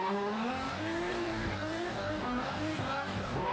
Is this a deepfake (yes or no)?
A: yes